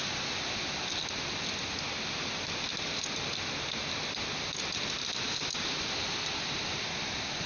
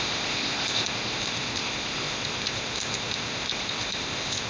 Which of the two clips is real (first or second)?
first